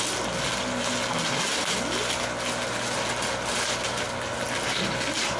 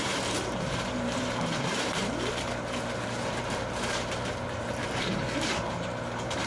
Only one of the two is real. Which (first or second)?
first